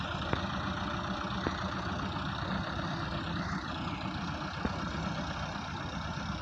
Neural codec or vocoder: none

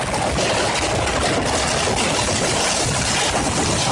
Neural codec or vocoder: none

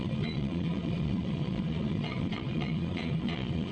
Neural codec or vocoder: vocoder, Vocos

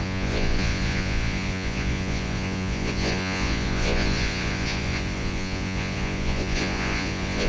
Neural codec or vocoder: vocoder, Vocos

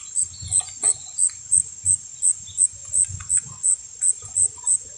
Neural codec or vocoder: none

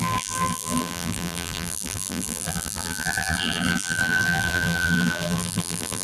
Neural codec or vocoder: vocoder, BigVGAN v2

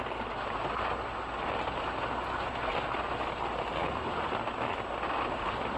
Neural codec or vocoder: none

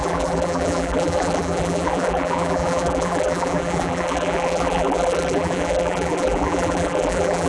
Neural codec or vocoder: vocoder, BigVGAN v2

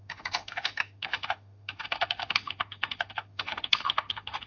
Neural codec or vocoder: autoencoder, DAC-VAE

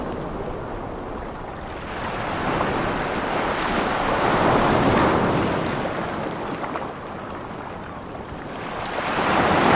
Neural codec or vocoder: none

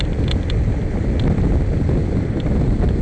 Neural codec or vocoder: none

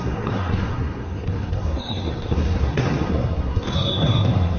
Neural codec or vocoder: codec, SNAC